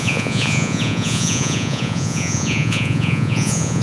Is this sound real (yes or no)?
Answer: no